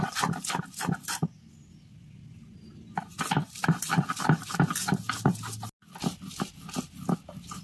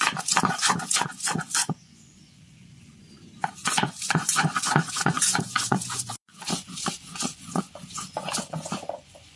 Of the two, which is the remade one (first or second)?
second